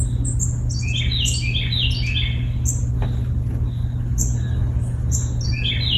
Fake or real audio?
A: real